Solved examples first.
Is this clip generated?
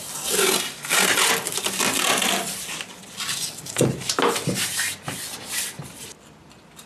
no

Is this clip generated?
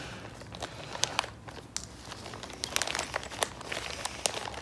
no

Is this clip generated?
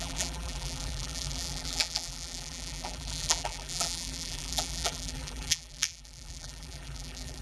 yes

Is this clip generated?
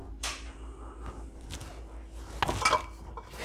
no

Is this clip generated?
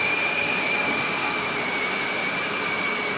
no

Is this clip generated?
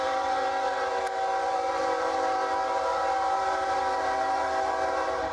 yes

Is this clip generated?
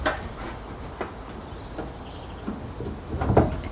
no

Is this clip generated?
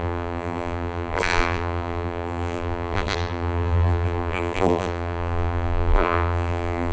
yes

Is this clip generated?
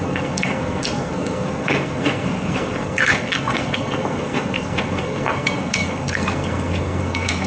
yes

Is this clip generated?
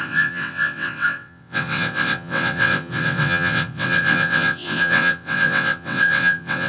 yes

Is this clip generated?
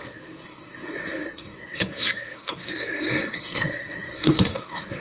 yes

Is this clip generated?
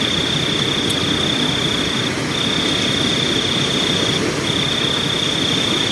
no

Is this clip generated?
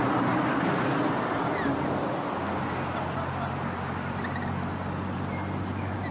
no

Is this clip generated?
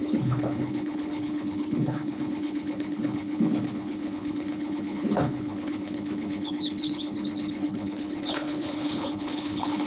yes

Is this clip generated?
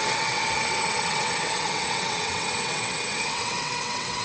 yes